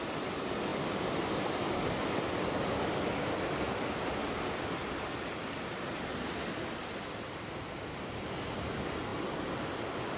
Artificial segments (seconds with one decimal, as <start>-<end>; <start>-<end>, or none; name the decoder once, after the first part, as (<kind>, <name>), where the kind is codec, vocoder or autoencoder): none